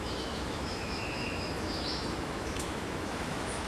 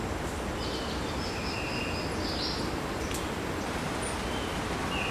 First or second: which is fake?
first